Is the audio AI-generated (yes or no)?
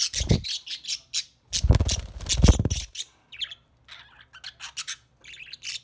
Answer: no